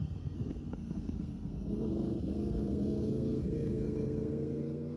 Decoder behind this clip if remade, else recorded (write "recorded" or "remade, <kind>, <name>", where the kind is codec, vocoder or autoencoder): remade, codec, SNAC